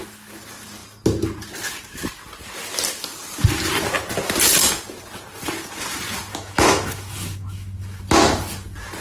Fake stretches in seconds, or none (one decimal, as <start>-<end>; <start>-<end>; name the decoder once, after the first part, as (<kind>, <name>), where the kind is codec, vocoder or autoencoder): 6.3-8.0 (autoencoder, DAC-VAE)

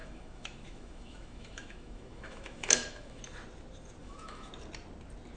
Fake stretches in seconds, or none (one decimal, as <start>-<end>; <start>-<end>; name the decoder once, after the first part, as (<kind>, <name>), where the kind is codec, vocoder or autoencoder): 0.0-3.2 (autoencoder, DAC-VAE); 4.0-4.5

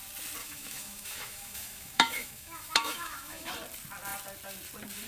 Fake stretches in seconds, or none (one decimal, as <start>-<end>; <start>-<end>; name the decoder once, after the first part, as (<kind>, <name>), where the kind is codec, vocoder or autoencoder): 0.4-3.5 (autoencoder, DAC-VAE)

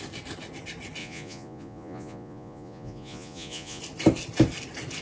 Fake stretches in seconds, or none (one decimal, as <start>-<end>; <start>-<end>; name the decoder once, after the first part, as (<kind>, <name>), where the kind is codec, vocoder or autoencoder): 1.0-3.8 (vocoder, Vocos)

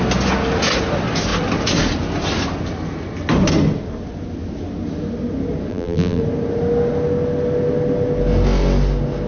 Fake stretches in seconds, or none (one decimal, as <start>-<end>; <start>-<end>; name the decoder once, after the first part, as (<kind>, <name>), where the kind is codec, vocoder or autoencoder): 5.7-6.2 (vocoder, BigVGAN v2)

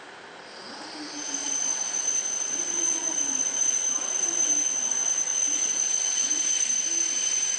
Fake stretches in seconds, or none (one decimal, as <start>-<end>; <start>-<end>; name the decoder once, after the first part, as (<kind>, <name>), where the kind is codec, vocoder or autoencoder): 1.4-4.0 (vocoder, Vocos); 5.3-6.3